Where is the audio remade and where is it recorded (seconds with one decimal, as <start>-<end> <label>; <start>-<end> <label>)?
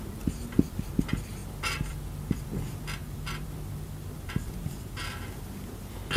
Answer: 0.0-1.4 recorded; 1.4-2.6 remade; 2.6-3.0 recorded; 3.0-5.2 remade; 5.2-6.2 recorded